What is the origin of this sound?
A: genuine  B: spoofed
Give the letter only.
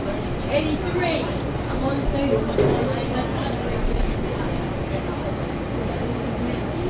A